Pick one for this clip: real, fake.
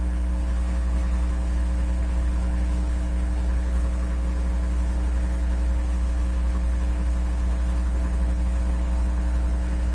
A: fake